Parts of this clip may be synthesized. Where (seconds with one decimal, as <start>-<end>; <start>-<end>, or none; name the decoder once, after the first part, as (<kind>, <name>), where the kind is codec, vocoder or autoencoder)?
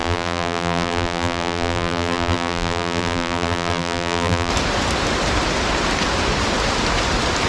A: 0.0-4.5 (vocoder, BigVGAN v2)